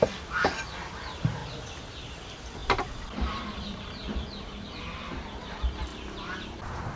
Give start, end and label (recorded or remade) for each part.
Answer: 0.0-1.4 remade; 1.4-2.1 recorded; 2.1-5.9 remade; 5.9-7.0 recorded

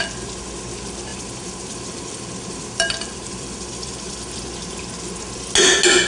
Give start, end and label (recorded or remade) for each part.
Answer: 0.0-1.1 recorded; 1.1-4.4 remade; 4.4-6.1 recorded

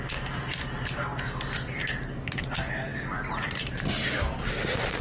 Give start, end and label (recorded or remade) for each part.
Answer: 0.0-1.1 recorded; 1.1-1.8 remade; 1.8-2.9 recorded; 2.9-3.9 remade; 3.9-5.0 recorded